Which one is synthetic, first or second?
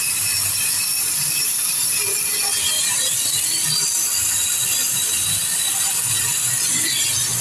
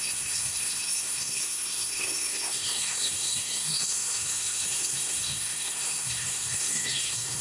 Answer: second